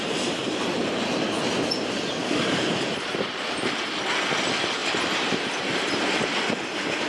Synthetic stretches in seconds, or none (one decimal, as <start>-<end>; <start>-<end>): 0.4-0.9; 2.2-3.9